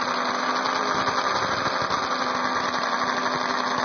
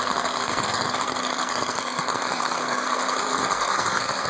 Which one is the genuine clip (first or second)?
first